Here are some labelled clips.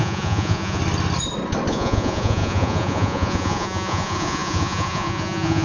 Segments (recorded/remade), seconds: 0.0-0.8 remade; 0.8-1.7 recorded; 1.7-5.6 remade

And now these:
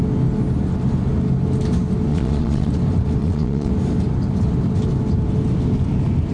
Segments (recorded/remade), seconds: 0.0-2.1 recorded; 2.1-2.7 remade; 2.7-3.2 recorded; 3.2-3.7 remade; 3.7-6.3 recorded

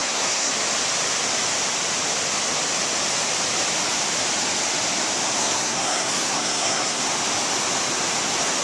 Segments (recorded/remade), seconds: 0.0-0.5 remade; 0.5-5.4 recorded; 5.4-7.0 remade; 7.0-8.6 recorded

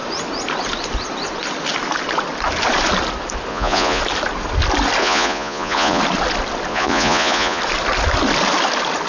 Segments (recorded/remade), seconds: 0.0-3.5 recorded; 3.5-4.0 remade; 4.0-5.0 recorded; 5.0-6.0 remade; 6.0-6.7 recorded; 6.7-7.6 remade; 7.6-9.1 recorded

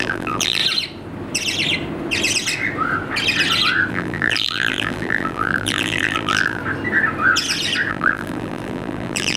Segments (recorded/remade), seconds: 0.0-0.6 remade; 0.6-3.9 recorded; 3.9-6.6 remade; 6.6-7.9 recorded; 7.9-9.4 remade

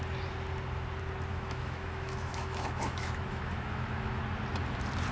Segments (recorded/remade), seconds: 0.0-1.3 recorded; 1.3-4.2 remade; 4.2-5.1 recorded